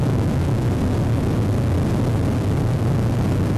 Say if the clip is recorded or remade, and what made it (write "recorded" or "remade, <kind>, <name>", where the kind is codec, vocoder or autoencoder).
recorded